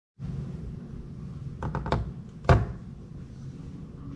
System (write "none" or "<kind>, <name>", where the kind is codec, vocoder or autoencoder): none